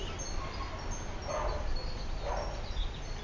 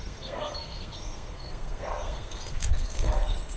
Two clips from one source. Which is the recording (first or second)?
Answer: first